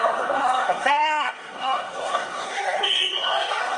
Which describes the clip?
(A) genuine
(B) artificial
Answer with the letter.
B